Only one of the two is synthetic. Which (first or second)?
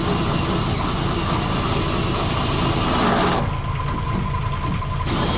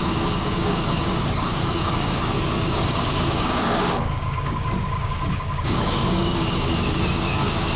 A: second